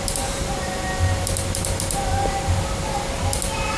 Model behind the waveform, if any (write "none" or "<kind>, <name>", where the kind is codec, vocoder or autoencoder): none